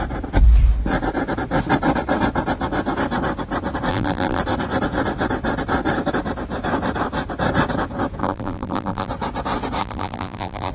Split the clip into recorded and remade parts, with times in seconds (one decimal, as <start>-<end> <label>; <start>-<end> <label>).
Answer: 0.0-3.9 recorded; 3.9-4.4 remade; 4.4-8.2 recorded; 8.2-9.1 remade; 9.1-9.8 recorded; 9.8-10.7 remade